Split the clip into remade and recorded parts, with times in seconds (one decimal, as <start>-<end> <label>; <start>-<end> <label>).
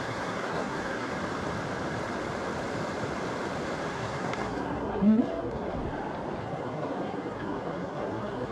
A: 0.0-1.1 remade; 1.1-3.9 recorded; 3.9-5.8 remade; 5.8-6.4 recorded; 6.4-8.5 remade